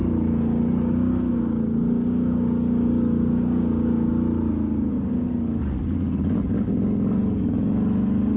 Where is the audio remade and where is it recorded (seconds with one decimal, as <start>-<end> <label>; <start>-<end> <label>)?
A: 0.0-4.1 remade; 4.1-8.4 recorded